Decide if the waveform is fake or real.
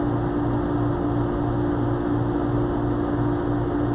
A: real